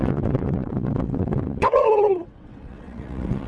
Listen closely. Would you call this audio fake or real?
fake